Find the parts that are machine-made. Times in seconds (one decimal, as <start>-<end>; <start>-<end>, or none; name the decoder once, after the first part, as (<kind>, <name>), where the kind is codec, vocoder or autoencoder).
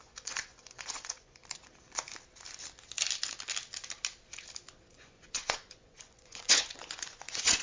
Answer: 0.0-1.4 (vocoder, Vocos); 4.9-7.6